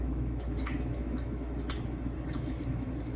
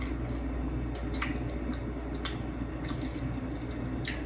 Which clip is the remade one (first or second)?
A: first